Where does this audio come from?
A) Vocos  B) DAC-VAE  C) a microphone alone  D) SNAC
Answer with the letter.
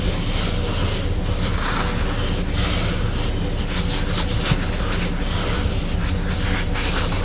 C